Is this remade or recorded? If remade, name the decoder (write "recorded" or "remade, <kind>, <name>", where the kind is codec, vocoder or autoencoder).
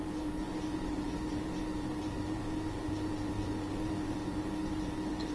remade, vocoder, BigVGAN v2